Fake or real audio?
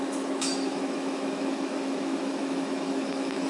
fake